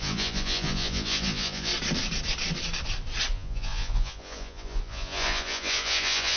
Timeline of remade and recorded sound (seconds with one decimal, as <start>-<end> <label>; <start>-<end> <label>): 0.0-1.7 remade; 1.7-3.3 recorded; 3.3-6.4 remade

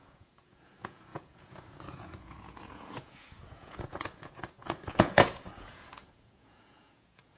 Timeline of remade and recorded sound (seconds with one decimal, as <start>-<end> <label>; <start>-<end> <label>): 0.0-7.4 remade

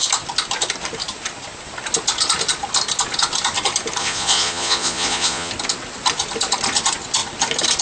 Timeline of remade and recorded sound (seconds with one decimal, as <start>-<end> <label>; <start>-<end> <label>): 0.0-4.0 recorded; 4.0-5.5 remade; 5.5-7.8 recorded

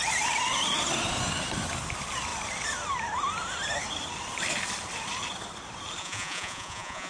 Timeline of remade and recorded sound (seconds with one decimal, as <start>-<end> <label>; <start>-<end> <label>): 0.0-6.0 recorded; 6.0-7.1 remade